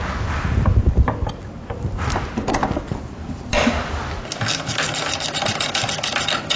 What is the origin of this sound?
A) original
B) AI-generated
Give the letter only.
A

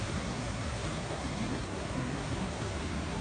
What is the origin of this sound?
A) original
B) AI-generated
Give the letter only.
B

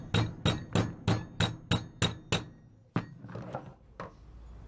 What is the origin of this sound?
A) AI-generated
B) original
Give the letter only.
B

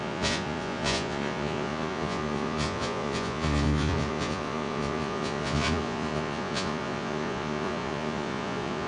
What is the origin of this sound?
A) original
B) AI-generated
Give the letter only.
B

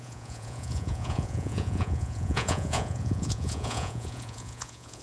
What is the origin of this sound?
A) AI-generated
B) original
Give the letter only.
A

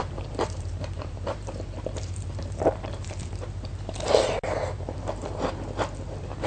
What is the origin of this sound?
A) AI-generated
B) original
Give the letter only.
A